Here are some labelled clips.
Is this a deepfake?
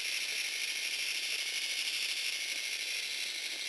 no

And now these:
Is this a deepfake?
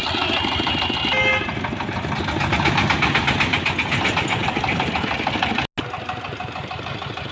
no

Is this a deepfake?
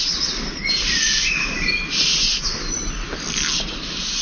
no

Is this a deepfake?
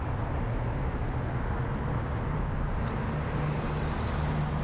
no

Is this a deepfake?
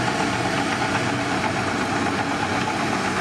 no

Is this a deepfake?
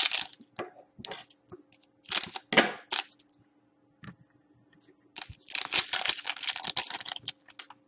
no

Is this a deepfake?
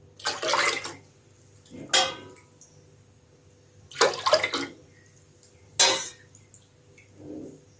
no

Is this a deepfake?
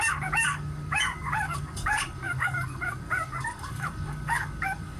yes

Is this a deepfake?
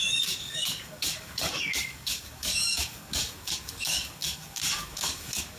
yes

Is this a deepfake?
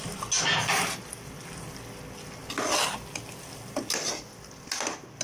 no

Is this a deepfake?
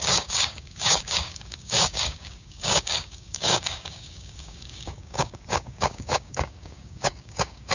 yes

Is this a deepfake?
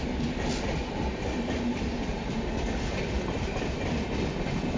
no